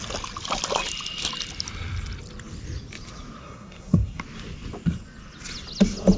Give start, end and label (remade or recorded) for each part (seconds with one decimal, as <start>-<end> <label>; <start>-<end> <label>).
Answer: 0.0-3.4 recorded; 3.4-4.2 remade; 4.2-6.2 recorded